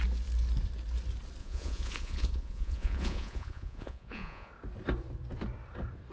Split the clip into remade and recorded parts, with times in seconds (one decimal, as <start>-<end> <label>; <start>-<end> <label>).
0.0-1.4 recorded; 1.4-4.5 remade; 4.5-6.1 recorded